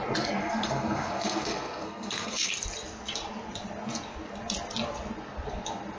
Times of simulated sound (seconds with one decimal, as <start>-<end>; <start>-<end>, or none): 0.4-2.5